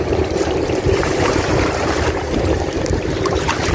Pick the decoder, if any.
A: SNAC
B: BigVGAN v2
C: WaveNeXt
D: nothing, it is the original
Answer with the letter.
B